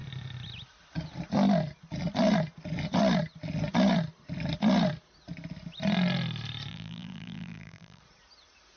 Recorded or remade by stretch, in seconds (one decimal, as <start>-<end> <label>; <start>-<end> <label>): 0.0-6.7 recorded; 6.7-8.0 remade; 8.0-8.8 recorded